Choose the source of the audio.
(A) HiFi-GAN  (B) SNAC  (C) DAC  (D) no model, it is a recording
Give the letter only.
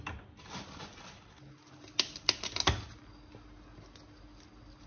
D